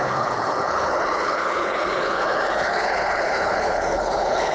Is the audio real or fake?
fake